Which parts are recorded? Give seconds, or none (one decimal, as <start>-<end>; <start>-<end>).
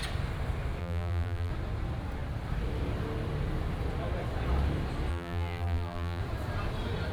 0.0-0.8; 1.5-5.1; 6.2-7.1